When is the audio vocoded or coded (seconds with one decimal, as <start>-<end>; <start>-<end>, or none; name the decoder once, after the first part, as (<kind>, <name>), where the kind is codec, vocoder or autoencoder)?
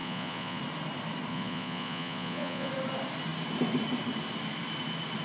0.0-0.6 (vocoder, Vocos); 1.3-2.7